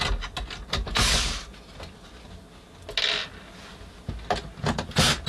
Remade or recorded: recorded